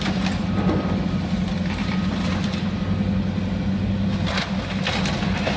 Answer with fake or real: real